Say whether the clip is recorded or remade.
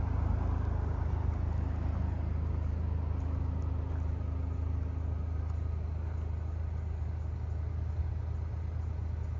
recorded